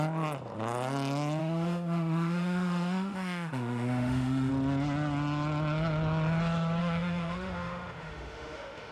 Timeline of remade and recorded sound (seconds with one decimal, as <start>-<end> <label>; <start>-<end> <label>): 0.0-1.4 recorded; 1.4-4.5 remade; 4.5-6.8 recorded; 6.8-8.9 remade